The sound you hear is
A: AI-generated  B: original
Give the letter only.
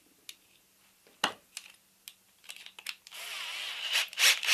B